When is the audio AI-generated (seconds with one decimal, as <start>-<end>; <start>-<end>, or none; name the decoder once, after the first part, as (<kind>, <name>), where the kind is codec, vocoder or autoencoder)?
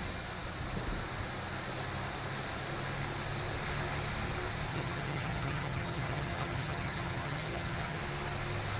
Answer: 4.7-8.0 (vocoder, HiFi-GAN)